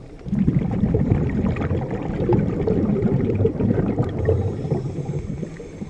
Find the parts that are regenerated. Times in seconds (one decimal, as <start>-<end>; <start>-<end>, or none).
2.9-5.2